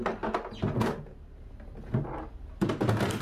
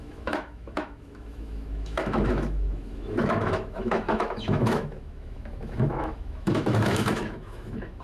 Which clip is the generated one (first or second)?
second